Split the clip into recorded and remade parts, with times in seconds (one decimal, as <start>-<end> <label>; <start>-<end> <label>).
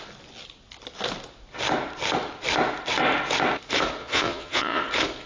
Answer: 0.0-4.0 recorded; 4.0-4.8 remade; 4.8-5.3 recorded